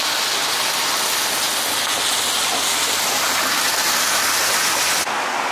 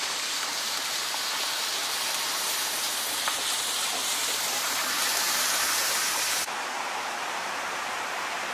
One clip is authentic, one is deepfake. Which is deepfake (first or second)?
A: second